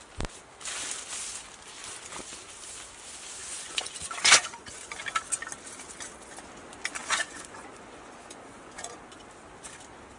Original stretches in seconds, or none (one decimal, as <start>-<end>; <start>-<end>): 0.0-3.4; 4.8-7.0; 9.0-10.2